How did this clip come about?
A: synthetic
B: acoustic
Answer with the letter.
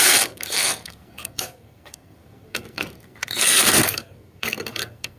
A